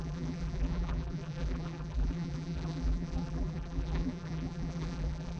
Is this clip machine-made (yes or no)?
yes